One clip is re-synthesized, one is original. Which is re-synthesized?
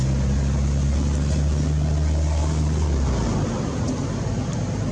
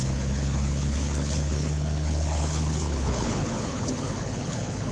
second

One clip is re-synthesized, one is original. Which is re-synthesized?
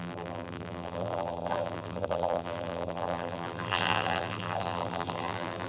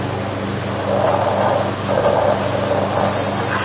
first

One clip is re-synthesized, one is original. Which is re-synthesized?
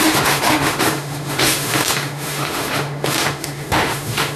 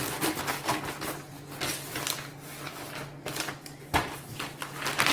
first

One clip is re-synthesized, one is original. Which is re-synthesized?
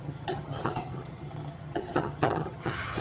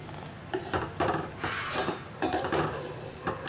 first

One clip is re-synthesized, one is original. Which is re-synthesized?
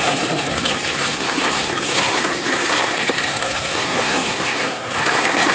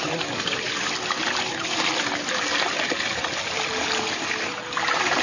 first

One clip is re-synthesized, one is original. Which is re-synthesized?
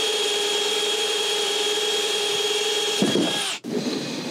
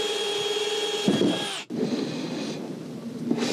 first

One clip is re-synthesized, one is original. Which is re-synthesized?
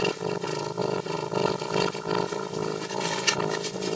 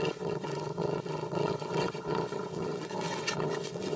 second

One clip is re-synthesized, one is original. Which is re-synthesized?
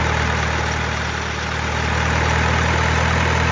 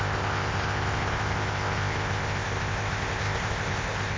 second